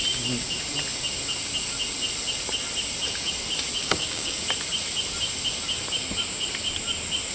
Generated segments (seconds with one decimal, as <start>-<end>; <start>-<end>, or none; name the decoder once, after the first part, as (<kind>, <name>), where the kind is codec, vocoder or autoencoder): 3.8-4.4 (codec, DAC)